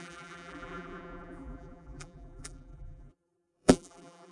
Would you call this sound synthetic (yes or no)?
yes